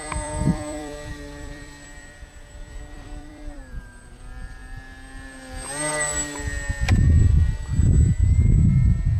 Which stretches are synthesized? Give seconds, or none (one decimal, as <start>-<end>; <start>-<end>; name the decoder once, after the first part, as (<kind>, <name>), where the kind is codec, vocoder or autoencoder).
0.0-4.6 (vocoder, BigVGAN v2); 7.2-8.2